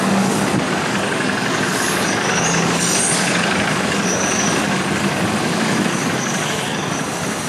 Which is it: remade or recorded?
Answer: remade